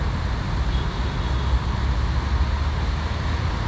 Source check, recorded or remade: recorded